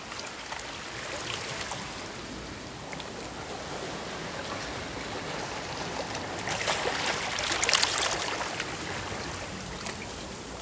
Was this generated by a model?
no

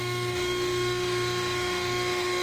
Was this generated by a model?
yes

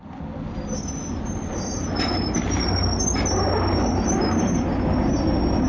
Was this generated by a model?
no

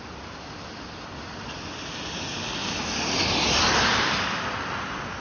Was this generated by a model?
no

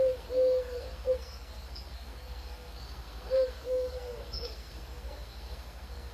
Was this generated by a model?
yes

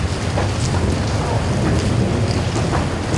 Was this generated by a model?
no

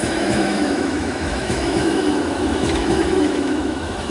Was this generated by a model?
yes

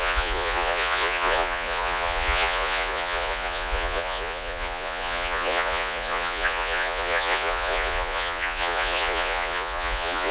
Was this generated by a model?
yes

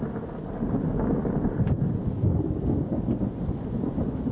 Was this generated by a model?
no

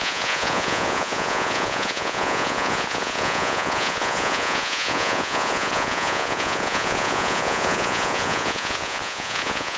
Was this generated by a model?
yes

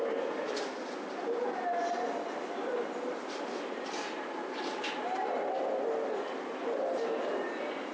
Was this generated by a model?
no